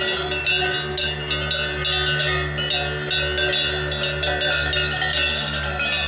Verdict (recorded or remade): recorded